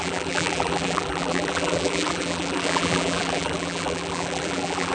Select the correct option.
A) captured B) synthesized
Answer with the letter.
B